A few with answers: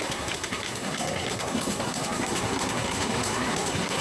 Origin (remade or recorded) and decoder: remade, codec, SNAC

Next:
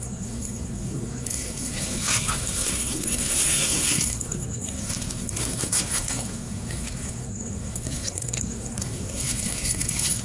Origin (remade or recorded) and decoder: remade, codec, SNAC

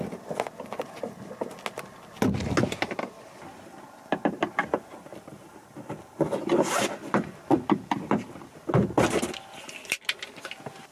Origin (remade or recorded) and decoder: recorded